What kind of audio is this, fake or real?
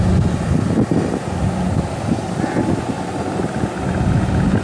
real